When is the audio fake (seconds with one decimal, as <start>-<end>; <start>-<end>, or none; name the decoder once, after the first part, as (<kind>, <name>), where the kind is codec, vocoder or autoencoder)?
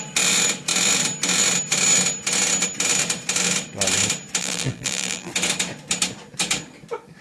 4.4-5.3 (vocoder, BigVGAN v2)